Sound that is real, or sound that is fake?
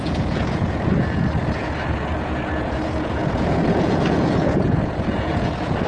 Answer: fake